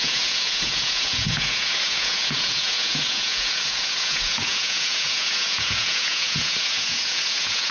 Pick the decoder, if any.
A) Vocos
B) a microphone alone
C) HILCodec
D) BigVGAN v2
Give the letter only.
A